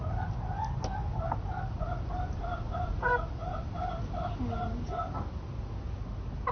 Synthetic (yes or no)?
no